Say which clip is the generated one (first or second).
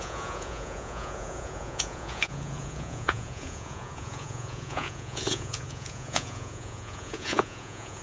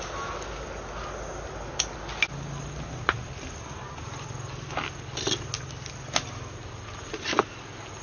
first